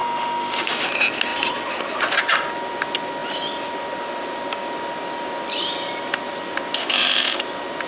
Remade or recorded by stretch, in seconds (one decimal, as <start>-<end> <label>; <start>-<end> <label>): 0.0-0.7 remade; 0.7-6.8 recorded; 6.8-7.4 remade; 7.4-7.9 recorded